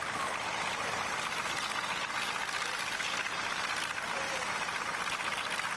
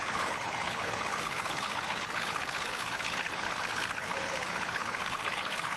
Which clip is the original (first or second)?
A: first